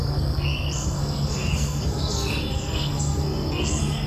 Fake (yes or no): yes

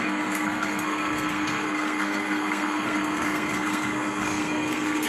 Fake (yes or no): yes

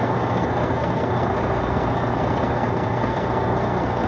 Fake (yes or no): yes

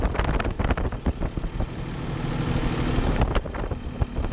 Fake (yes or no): no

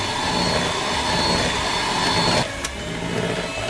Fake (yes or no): no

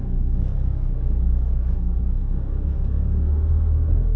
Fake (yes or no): yes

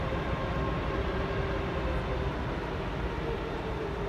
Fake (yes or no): no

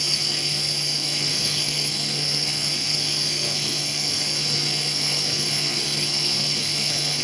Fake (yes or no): yes